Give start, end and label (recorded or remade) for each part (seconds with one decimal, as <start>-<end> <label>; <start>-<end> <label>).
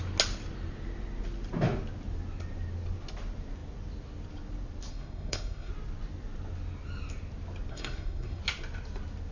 0.0-4.9 recorded; 4.9-5.7 remade; 5.7-7.7 recorded; 7.7-8.4 remade; 8.4-9.3 recorded